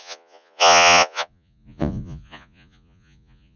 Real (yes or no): no